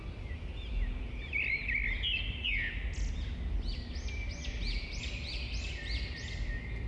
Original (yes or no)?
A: yes